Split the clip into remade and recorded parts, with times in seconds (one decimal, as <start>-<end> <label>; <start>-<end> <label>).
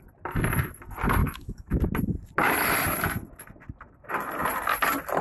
0.0-1.2 recorded; 1.2-1.9 remade; 1.9-5.2 recorded